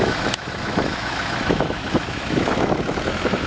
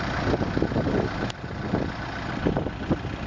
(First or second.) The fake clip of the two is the first